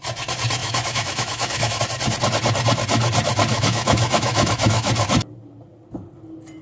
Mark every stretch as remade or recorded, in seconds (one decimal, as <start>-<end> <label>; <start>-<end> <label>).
0.0-0.6 recorded; 0.6-1.8 remade; 1.8-3.5 recorded; 3.5-4.9 remade; 4.9-6.6 recorded